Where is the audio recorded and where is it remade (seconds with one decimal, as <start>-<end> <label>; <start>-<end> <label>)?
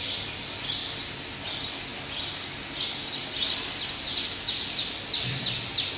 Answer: 0.0-1.9 remade; 1.9-4.6 recorded; 4.6-6.0 remade